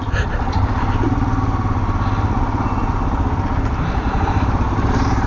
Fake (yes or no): no